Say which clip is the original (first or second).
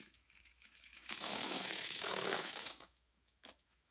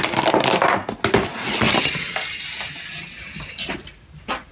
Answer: second